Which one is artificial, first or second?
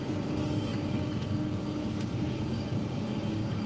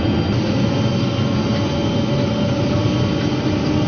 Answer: first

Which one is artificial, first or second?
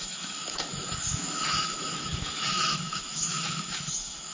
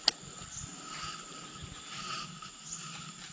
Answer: first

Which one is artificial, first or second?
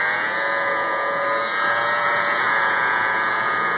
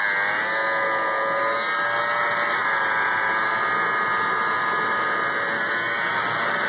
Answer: first